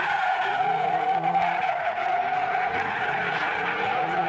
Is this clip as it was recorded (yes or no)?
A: no